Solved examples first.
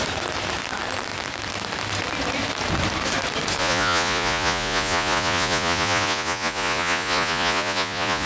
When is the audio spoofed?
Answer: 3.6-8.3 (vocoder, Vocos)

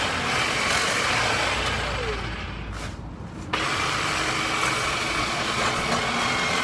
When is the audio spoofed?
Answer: 4.7-5.9 (vocoder, Vocos)

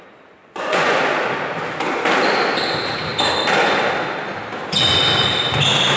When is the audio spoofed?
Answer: 0.4-1.0 (vocoder, Vocos)

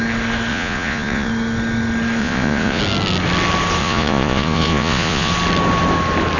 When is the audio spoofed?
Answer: 0.5-1.3 (vocoder, Vocos); 2.2-2.8; 3.8-5.3

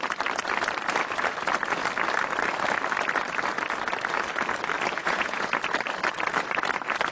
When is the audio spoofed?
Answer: 5.0-5.5 (vocoder, Vocos)

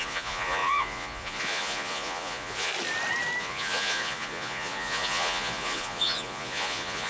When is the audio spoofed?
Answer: 0.0-2.7 (vocoder, Vocos); 3.4-7.1

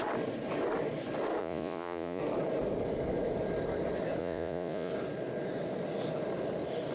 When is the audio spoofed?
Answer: 1.4-2.2 (vocoder, Vocos); 4.2-4.9